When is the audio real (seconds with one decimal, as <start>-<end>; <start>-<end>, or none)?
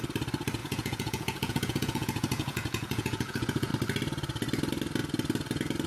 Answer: 0.0-0.6; 3.7-5.9